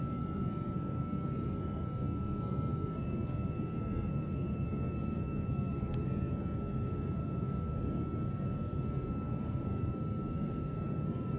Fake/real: fake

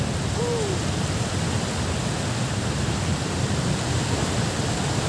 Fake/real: fake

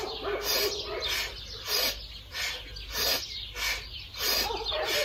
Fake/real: real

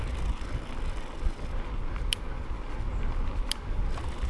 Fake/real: real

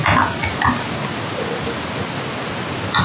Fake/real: real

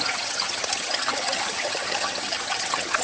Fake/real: fake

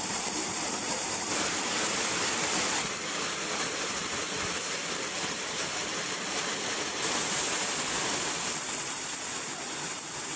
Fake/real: real